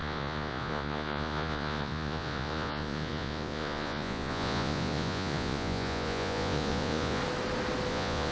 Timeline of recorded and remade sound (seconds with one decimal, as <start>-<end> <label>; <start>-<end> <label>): 0.0-7.2 remade; 7.2-7.9 recorded; 7.9-8.3 remade